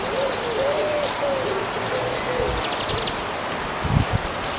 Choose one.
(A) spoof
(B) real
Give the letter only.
B